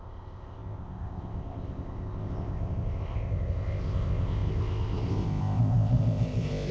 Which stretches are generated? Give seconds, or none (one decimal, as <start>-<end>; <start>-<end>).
0.0-6.7